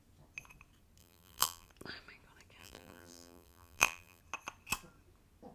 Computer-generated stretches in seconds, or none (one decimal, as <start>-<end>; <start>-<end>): 1.0-1.7; 2.6-4.2